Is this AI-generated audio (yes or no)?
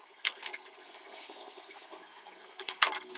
yes